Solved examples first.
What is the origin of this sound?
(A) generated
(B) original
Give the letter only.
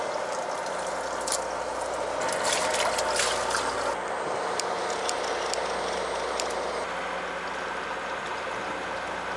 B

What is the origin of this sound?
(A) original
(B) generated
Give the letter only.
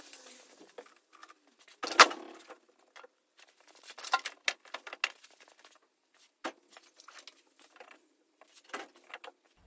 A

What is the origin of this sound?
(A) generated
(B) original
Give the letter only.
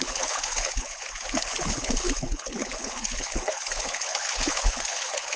A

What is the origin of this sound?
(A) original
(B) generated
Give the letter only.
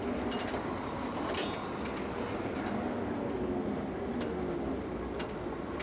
A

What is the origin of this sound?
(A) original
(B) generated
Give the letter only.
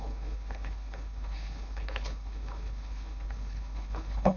B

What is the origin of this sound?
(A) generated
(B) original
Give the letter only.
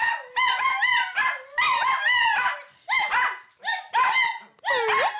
B